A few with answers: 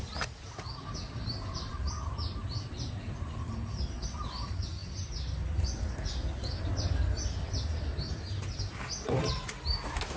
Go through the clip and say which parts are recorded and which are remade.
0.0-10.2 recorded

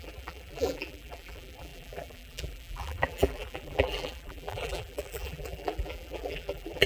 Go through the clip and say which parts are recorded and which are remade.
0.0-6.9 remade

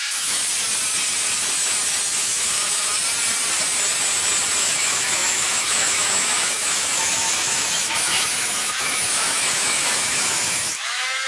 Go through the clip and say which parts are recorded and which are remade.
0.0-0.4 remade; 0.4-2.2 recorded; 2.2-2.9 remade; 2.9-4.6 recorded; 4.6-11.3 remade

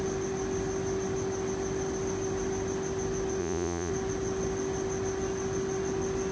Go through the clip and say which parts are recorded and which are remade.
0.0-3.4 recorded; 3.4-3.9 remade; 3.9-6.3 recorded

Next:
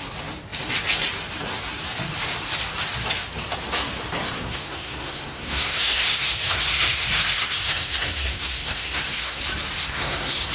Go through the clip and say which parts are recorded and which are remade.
0.0-4.2 recorded; 4.2-9.4 remade; 9.4-9.8 recorded; 9.8-10.5 remade

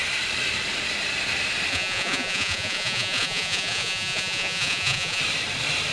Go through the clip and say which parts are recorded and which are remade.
0.0-1.7 recorded; 1.7-5.2 remade; 5.2-5.9 recorded

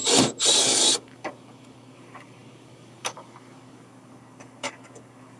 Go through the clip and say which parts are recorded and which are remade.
0.0-0.5 recorded; 0.5-5.4 remade

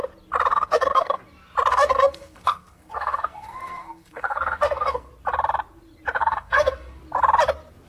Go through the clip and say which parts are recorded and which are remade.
0.0-0.5 recorded; 0.5-1.2 remade; 1.2-1.7 recorded; 1.7-5.1 remade; 5.1-6.2 recorded; 6.2-7.0 remade; 7.0-7.9 recorded